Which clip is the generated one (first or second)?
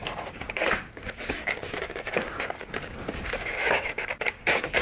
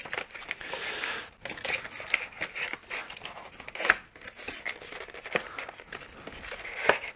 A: first